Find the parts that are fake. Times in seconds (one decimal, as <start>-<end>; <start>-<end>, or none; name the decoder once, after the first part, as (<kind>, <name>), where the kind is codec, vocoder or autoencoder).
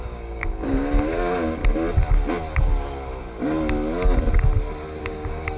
0.0-1.6 (codec, DAC); 5.0-5.6